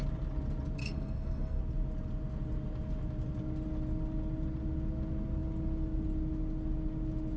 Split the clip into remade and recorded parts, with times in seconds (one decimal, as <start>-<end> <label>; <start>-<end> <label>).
0.0-0.8 recorded; 0.8-1.6 remade; 1.6-7.4 recorded